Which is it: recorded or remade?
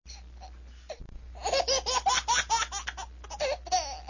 recorded